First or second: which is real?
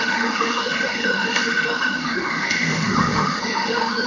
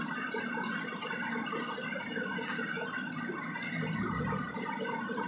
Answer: second